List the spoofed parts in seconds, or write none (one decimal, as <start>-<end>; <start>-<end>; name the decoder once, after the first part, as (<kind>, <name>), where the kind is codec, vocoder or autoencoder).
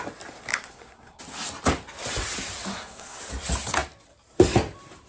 0.5-1.2 (codec, SNAC); 2.7-3.2